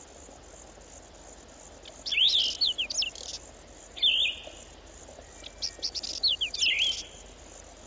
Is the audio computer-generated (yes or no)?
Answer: no